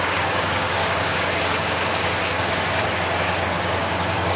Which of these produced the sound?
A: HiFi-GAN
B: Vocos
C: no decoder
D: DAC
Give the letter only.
D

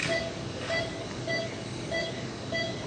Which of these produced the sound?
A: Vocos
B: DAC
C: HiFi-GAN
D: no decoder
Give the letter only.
B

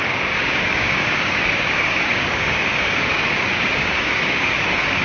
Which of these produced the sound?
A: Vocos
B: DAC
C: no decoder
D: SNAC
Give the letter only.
B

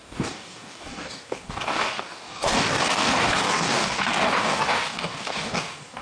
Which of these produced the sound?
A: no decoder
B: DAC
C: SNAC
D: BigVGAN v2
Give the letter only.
B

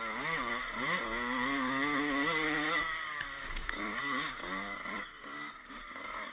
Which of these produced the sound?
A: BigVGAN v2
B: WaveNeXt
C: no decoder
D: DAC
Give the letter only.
D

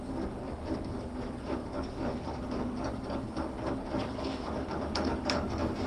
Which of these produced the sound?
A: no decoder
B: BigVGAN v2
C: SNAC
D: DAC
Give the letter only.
D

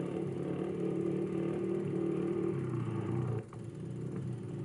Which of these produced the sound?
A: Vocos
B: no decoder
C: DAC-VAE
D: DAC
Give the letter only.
B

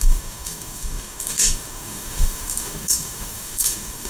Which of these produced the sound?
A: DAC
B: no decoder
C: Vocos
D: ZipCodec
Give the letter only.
A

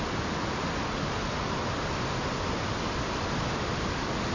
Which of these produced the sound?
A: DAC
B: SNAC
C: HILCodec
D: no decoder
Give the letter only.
D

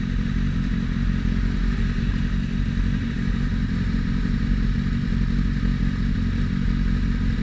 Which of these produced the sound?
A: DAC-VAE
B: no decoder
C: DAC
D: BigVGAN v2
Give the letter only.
B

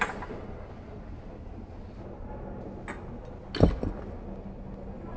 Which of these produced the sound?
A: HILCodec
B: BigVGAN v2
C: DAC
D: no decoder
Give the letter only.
D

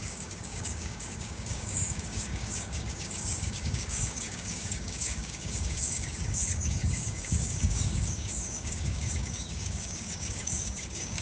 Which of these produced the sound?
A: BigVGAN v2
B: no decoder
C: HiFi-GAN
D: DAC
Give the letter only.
D